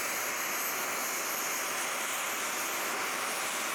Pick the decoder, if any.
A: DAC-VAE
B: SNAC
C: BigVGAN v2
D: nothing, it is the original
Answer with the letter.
D